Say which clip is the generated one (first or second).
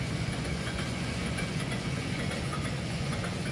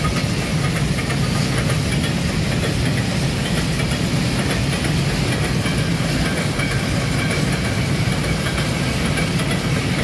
first